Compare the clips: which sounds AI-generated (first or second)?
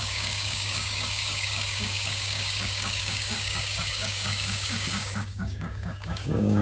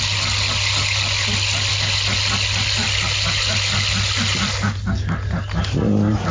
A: first